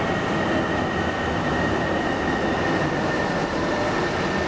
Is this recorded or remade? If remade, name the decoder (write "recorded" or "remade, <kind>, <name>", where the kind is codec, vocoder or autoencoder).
recorded